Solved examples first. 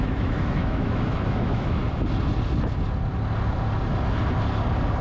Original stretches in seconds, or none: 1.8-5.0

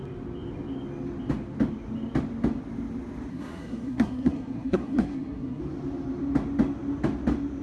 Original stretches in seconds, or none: 0.0-3.3; 5.6-7.6